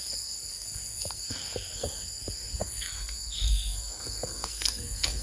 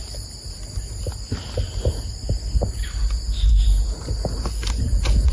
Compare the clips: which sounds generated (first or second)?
first